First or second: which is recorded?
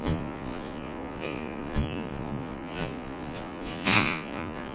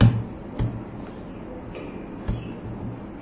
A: second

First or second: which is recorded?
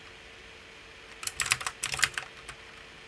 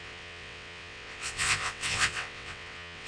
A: first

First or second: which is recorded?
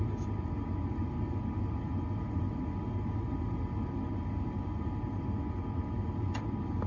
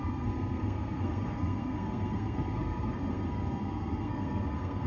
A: first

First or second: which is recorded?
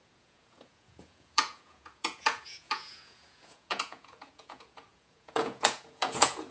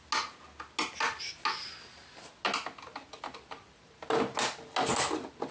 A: second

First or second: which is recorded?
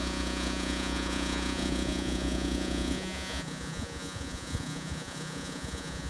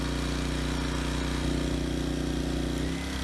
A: second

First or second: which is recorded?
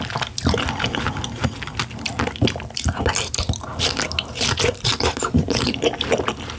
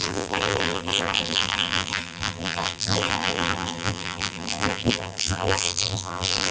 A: first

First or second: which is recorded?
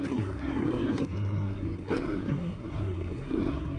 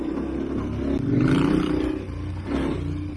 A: second